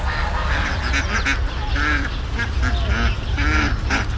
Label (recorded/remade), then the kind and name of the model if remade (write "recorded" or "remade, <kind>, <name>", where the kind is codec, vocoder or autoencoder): recorded